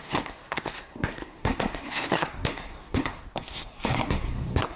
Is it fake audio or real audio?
fake